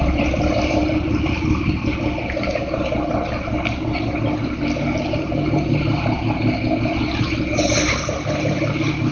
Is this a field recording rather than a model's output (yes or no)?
yes